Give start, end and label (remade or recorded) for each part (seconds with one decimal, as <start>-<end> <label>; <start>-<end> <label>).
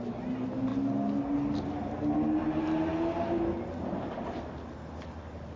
0.0-5.6 recorded